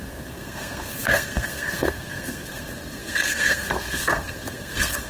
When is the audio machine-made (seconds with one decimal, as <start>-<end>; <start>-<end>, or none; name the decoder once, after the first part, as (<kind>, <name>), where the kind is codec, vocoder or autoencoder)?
0.0-5.1 (codec, SNAC)